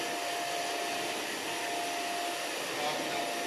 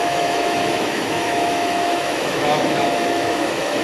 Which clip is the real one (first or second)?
first